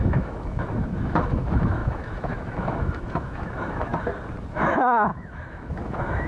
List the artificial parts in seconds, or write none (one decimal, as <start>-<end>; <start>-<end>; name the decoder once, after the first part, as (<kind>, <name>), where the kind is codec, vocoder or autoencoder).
0.0-3.9 (autoencoder, DAC-VAE); 4.5-6.3